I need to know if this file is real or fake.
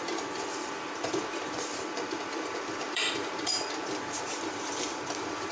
fake